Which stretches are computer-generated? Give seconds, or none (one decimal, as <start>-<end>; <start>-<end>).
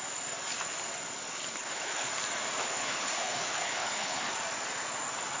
1.4-2.1; 2.6-4.3